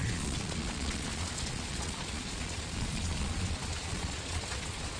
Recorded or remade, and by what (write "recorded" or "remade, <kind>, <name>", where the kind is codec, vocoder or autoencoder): remade, vocoder, Vocos